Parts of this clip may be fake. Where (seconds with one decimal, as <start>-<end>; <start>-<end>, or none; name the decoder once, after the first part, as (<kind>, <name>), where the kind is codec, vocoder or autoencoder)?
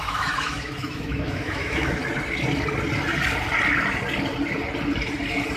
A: 0.0-2.0 (autoencoder, DAC-VAE)